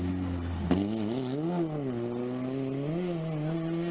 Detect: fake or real real